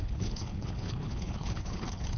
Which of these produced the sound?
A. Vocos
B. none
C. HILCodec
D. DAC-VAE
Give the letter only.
C